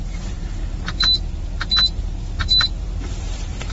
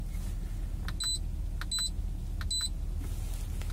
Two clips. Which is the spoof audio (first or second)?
first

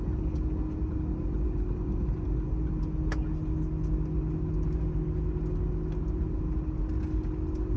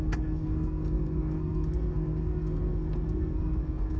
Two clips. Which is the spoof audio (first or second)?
second